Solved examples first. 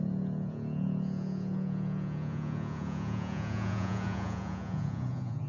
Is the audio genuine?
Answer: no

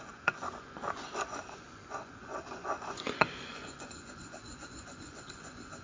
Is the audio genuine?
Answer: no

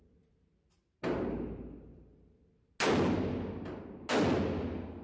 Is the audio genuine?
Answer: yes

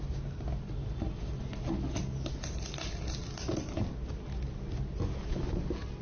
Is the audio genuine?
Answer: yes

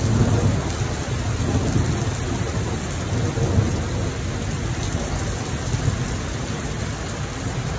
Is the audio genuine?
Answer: yes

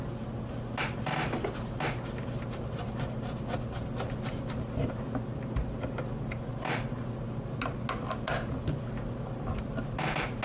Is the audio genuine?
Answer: yes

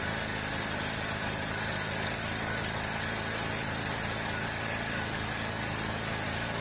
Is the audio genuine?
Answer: yes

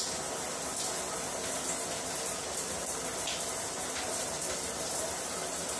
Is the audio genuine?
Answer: yes